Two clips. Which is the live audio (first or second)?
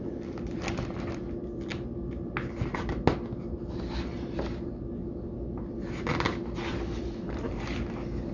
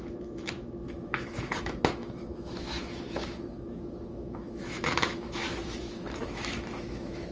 first